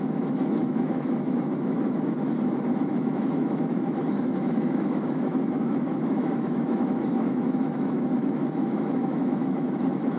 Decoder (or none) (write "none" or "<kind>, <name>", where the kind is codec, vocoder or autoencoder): autoencoder, DAC-VAE